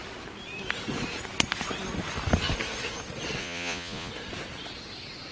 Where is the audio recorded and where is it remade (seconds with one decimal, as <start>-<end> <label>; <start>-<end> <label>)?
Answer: 0.0-3.4 recorded; 3.4-4.1 remade; 4.1-5.3 recorded